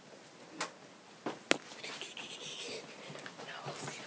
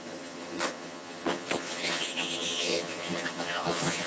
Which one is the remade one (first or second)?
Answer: second